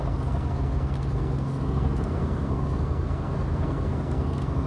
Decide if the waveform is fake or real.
fake